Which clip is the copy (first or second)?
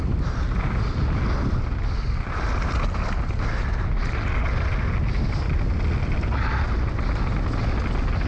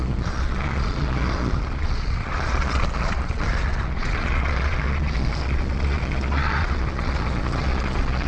second